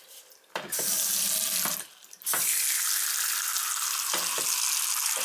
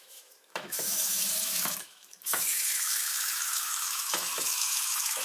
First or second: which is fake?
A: second